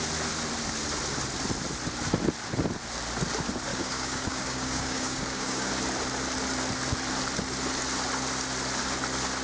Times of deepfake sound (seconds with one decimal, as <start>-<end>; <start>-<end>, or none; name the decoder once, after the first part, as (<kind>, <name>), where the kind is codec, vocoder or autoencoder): 3.7-5.7 (codec, DAC)